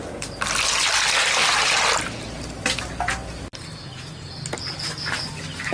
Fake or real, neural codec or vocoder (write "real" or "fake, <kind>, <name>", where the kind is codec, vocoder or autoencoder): real